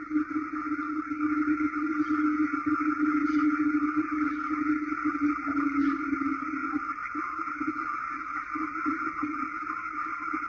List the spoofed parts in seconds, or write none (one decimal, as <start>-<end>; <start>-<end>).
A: none